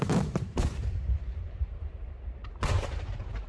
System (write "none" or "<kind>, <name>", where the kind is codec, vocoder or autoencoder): vocoder, BigVGAN v2